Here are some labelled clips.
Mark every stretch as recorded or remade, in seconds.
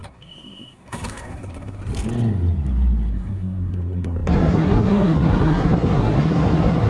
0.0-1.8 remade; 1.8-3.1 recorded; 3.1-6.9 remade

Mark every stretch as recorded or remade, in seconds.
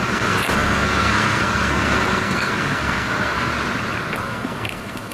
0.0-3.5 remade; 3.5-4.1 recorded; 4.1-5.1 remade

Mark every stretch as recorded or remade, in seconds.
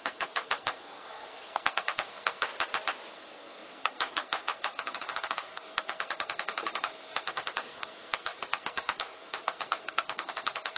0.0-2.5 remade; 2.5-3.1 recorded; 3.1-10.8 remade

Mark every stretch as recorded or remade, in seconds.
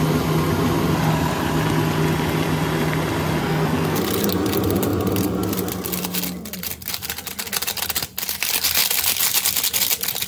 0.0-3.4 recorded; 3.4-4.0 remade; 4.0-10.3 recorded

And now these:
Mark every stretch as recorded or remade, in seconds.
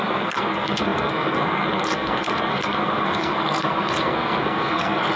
0.0-5.2 remade